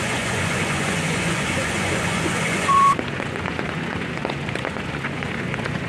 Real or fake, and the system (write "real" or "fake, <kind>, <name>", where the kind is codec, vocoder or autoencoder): fake, vocoder, Vocos